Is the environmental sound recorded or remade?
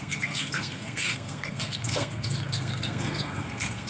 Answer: remade